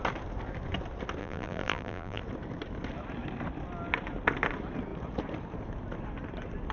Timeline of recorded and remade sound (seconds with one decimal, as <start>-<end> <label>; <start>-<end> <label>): 0.0-1.2 recorded; 1.2-2.2 remade; 2.2-6.7 recorded